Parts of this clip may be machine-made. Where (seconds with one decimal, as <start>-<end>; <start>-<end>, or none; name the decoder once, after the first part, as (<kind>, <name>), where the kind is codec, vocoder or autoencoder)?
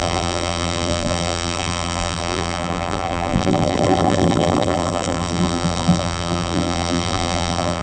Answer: 0.0-7.8 (vocoder, BigVGAN v2)